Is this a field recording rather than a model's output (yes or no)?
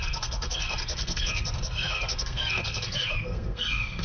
no